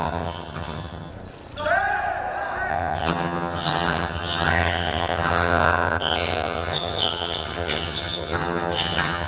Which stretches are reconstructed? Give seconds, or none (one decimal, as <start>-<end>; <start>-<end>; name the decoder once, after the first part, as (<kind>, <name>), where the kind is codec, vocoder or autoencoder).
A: 0.0-1.1 (vocoder, HiFi-GAN); 2.7-9.3